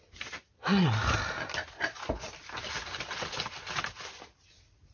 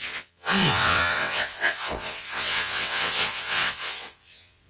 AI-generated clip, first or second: second